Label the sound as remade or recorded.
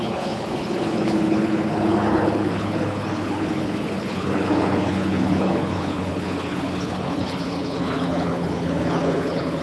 remade